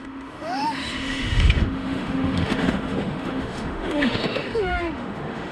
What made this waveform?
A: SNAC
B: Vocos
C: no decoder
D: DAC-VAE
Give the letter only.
D